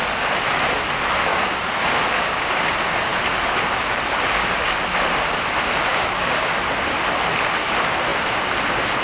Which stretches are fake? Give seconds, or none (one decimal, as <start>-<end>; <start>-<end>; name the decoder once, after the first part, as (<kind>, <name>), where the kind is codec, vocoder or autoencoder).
1.3-2.6 (codec, DAC); 5.9-6.5